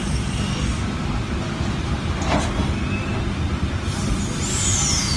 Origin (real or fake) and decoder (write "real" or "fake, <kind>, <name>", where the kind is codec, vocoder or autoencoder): real